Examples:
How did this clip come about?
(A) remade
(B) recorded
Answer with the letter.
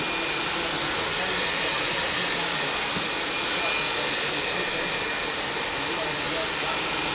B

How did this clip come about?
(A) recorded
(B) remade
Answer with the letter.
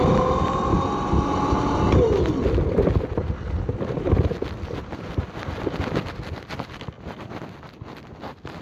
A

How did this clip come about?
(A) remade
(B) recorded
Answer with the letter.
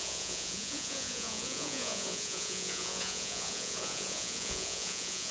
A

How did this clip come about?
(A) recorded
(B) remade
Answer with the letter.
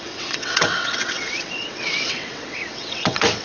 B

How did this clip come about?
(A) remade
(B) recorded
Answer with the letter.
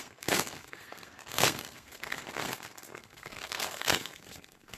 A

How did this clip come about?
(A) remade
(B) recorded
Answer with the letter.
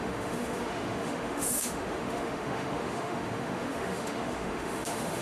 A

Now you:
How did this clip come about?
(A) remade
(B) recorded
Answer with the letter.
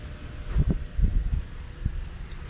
B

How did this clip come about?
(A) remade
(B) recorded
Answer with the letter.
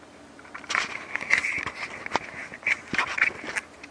B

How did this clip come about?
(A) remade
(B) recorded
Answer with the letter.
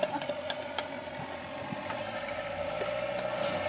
B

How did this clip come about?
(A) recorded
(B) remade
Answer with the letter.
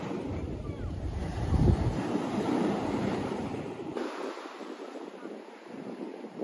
B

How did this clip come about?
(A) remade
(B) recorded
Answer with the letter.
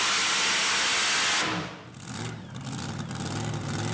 B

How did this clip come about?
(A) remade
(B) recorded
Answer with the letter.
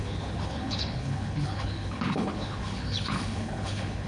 A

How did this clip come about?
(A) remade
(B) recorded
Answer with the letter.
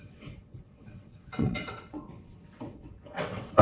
A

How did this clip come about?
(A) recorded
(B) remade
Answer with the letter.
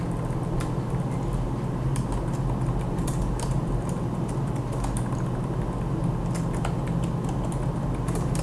B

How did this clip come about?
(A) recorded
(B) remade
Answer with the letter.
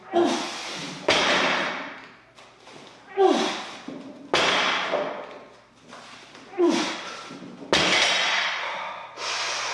A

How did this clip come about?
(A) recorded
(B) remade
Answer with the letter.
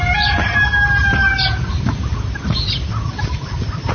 A